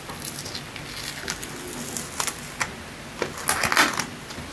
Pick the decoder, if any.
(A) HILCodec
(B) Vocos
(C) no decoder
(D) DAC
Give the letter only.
C